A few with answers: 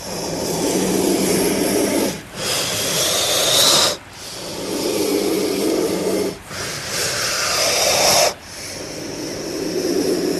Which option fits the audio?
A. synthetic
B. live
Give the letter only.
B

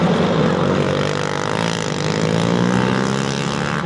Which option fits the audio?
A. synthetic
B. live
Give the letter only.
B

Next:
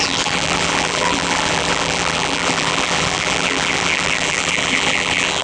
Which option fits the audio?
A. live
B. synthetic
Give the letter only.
B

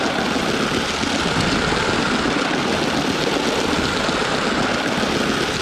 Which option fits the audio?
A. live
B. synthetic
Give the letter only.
A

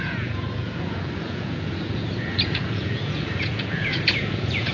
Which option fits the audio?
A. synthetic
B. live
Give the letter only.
A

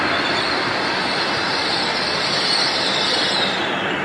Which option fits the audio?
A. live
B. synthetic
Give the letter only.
A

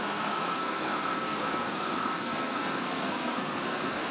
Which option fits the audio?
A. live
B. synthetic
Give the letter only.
B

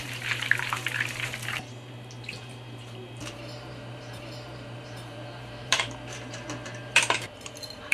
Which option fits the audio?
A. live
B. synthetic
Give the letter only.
B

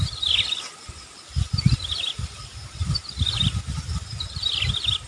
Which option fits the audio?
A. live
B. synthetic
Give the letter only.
A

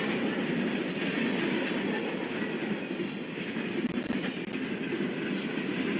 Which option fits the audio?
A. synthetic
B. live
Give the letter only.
B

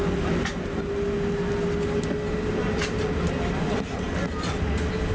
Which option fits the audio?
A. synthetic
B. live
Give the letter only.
B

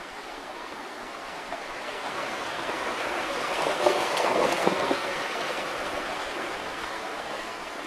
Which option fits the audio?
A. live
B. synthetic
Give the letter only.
B